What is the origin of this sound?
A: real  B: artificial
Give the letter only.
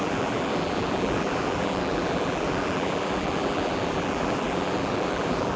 B